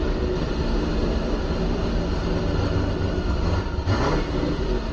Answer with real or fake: real